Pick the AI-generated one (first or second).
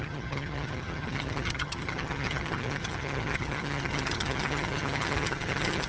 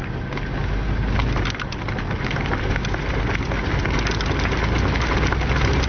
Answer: first